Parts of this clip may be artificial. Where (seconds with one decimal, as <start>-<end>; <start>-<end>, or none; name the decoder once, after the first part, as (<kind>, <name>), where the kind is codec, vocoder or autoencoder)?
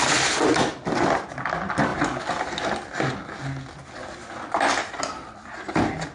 none